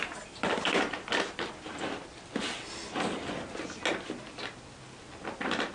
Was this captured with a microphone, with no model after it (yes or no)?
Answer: yes